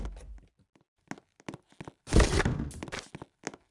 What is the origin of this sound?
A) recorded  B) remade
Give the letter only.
A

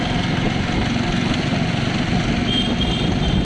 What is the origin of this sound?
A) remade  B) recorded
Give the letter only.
B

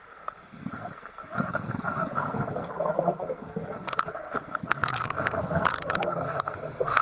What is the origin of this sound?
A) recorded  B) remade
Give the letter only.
B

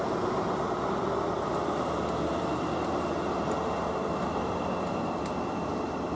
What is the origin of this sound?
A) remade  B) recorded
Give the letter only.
B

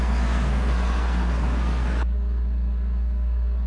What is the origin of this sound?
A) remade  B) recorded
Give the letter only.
A